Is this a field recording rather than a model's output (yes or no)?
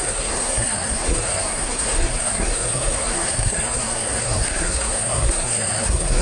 no